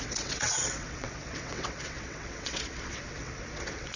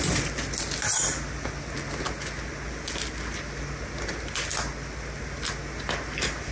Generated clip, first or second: first